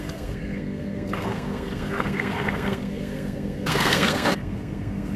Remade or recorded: remade